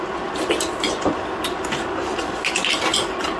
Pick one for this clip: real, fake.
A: real